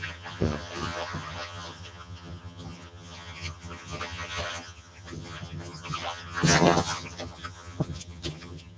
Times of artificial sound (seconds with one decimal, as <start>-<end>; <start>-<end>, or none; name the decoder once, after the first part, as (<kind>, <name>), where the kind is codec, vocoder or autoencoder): 0.0-8.8 (vocoder, HiFi-GAN)